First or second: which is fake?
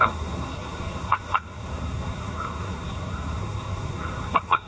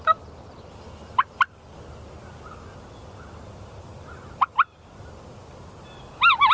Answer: first